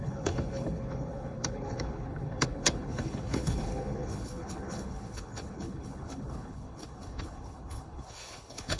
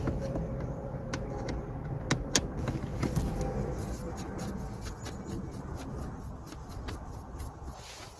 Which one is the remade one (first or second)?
first